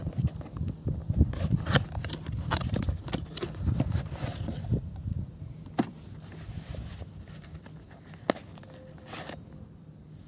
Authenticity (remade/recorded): recorded